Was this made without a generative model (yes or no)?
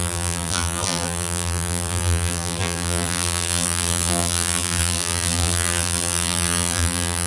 no